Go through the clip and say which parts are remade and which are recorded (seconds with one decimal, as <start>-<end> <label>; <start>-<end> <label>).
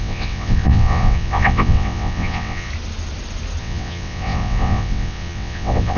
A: 0.0-2.7 remade; 2.7-3.6 recorded; 3.6-6.0 remade